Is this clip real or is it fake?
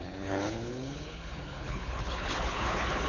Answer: fake